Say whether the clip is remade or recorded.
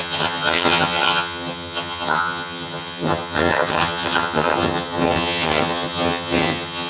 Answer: remade